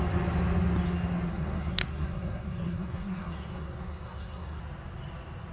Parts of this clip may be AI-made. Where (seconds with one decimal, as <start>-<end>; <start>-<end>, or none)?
1.3-4.6